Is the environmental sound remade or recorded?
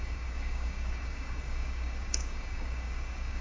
remade